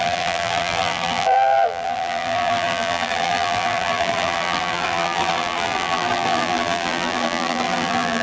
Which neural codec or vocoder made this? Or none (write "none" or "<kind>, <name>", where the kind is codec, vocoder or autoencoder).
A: vocoder, BigVGAN v2